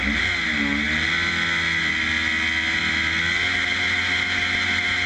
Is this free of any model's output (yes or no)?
yes